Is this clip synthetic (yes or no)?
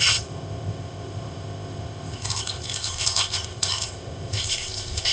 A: yes